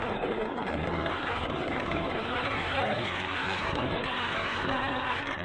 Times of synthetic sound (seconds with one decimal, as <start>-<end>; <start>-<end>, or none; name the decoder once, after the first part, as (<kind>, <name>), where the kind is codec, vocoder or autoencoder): 0.0-5.4 (codec, SNAC)